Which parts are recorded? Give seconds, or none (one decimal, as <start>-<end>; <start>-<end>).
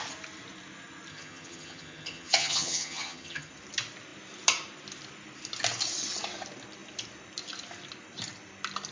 0.0-1.1; 3.5-8.9